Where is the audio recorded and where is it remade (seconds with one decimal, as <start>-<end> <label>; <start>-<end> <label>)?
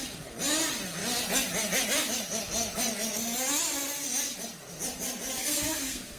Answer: 0.0-5.4 recorded; 5.4-6.2 remade